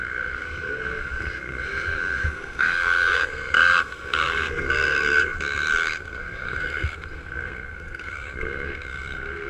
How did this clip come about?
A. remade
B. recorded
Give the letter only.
A